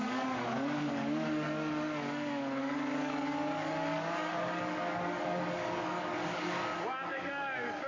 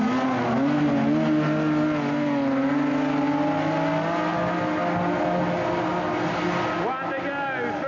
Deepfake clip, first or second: first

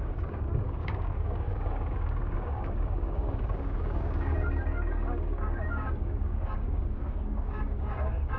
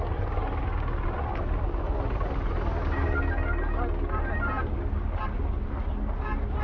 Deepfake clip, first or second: first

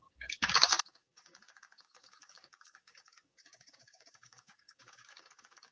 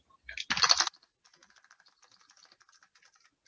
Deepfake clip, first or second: first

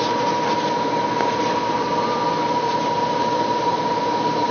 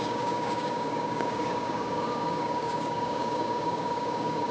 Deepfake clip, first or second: second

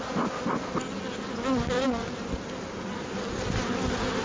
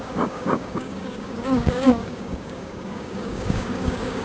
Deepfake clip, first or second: second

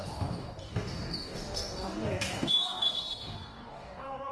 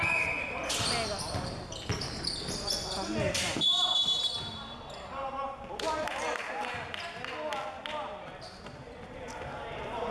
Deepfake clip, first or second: first